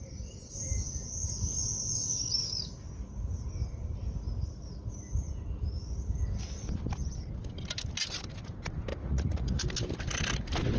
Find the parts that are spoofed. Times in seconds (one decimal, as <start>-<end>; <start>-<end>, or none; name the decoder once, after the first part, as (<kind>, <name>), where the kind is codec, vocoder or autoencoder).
8.9-9.6 (vocoder, Vocos)